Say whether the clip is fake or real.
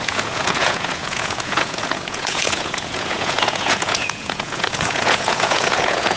fake